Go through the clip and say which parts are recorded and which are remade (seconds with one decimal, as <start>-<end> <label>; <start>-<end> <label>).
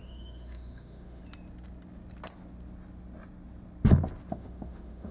0.0-1.2 remade; 1.2-4.3 recorded; 4.3-5.1 remade